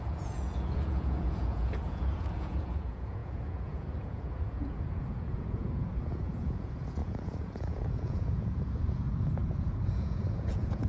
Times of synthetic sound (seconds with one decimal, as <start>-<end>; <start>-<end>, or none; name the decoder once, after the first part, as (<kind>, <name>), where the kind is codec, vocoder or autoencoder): 0.0-10.9 (vocoder, Vocos)